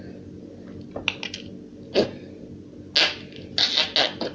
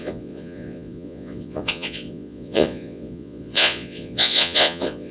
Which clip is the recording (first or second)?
first